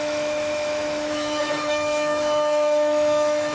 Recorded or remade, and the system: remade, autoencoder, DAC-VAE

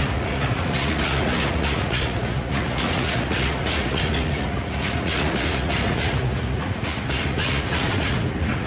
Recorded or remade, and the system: remade, vocoder, Vocos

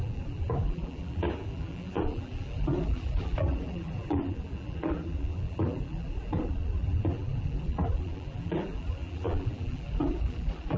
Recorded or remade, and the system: remade, vocoder, BigVGAN v2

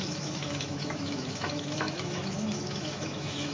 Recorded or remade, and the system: remade, autoencoder, DAC-VAE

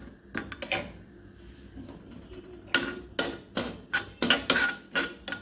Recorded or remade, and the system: recorded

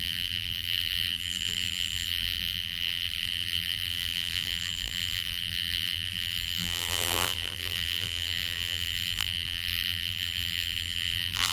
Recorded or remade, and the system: remade, vocoder, BigVGAN v2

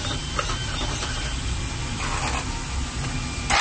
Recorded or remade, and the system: recorded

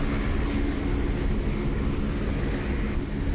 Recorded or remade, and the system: recorded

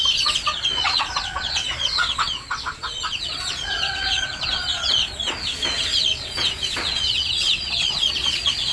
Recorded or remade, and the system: remade, vocoder, Vocos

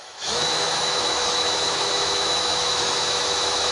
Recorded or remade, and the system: remade, autoencoder, DAC-VAE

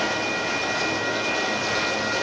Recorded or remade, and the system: recorded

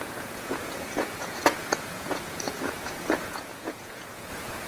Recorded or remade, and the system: remade, vocoder, Vocos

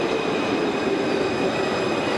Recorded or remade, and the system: recorded